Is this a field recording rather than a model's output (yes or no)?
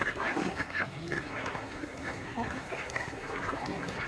no